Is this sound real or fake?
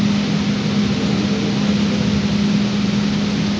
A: real